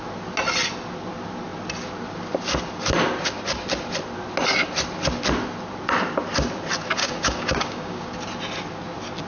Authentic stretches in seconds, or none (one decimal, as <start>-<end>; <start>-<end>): 0.0-7.0; 8.1-9.3